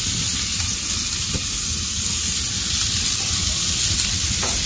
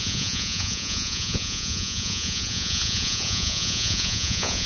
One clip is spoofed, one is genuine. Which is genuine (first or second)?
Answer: first